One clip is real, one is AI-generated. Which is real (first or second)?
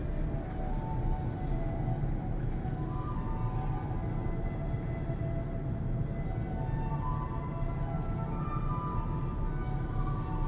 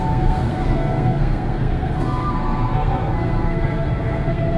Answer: first